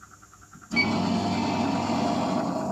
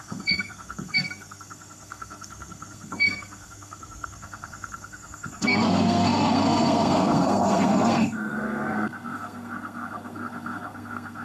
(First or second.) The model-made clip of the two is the second